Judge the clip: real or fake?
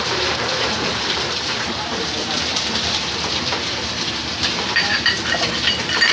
fake